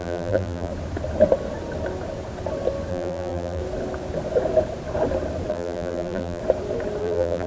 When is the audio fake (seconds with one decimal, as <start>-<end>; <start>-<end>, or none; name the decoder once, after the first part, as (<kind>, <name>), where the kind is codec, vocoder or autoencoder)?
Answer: 0.0-0.7 (vocoder, BigVGAN v2); 2.9-3.6; 5.5-6.4; 7.0-7.5